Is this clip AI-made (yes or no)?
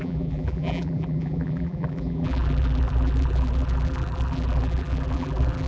yes